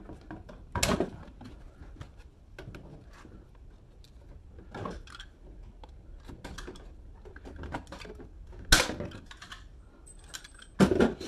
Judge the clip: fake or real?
real